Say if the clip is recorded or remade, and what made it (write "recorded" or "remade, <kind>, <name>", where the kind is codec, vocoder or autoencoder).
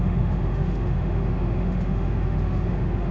remade, autoencoder, DAC-VAE